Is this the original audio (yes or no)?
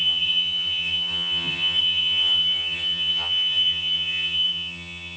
no